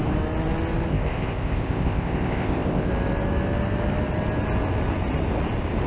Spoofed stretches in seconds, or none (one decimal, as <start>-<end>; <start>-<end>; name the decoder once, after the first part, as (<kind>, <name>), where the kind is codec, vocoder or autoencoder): 0.9-2.9 (codec, ZipCodec)